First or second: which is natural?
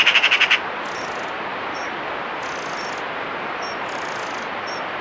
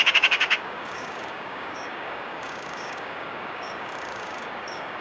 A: first